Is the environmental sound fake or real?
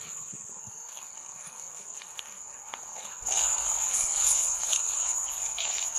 fake